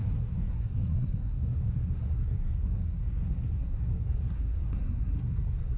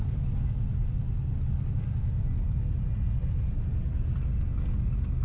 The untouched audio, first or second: second